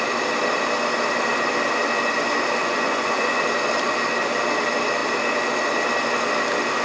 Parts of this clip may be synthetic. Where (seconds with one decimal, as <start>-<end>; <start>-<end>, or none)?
2.6-3.4